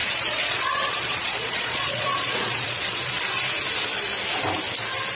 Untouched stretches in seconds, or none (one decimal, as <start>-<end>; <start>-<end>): 3.1-5.2